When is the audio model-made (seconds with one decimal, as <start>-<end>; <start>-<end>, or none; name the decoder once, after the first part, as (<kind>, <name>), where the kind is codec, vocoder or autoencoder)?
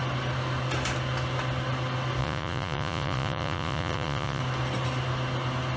2.2-4.4 (vocoder, Vocos)